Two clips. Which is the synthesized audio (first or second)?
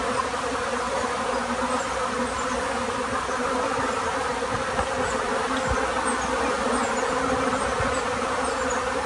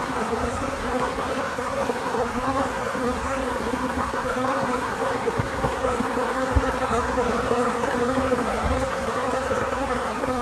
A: second